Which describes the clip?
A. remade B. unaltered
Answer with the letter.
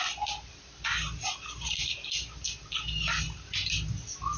B